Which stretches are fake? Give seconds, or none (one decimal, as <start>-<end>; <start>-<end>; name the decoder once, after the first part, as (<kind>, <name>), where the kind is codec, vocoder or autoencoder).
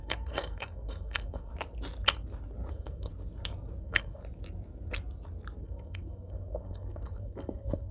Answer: 0.0-1.5 (codec, SNAC); 2.7-3.1; 3.8-4.2; 5.6-7.9